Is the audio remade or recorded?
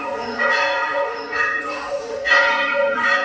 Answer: remade